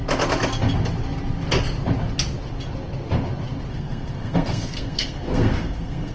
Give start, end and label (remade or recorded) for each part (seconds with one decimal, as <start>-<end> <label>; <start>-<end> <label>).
0.0-3.7 recorded; 3.7-6.1 remade

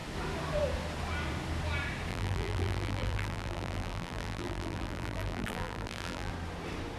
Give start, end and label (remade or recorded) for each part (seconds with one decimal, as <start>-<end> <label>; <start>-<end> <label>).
0.0-2.1 recorded; 2.1-6.3 remade; 6.3-7.0 recorded